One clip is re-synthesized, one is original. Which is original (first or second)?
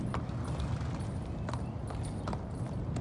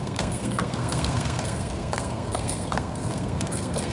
first